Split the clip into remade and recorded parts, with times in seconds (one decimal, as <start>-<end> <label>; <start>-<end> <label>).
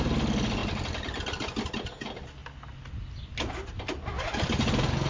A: 0.0-5.1 recorded